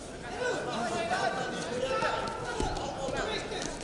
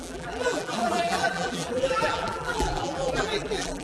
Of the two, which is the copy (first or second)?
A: second